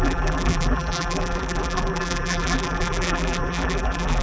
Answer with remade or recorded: remade